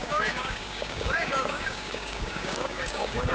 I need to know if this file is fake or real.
fake